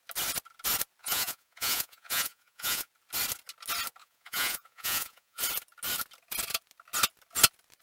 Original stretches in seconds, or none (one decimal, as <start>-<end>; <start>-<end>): 0.0-1.0; 2.9-4.0; 5.4-7.8